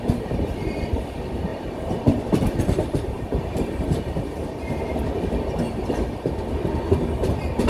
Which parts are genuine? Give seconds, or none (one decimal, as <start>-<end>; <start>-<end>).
0.0-1.5; 4.5-7.7